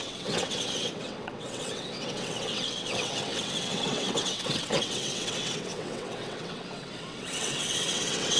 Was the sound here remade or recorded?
remade